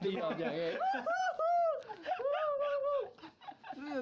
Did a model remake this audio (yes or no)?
no